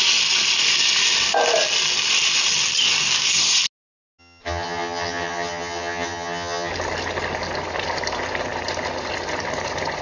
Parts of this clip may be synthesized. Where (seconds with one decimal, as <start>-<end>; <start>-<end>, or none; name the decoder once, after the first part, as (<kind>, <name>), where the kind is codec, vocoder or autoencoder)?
4.2-6.7 (vocoder, HiFi-GAN)